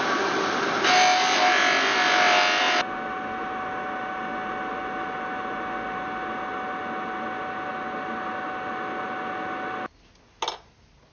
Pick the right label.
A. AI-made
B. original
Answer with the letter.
B